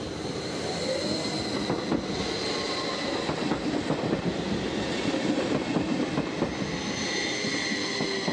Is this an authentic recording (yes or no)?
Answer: yes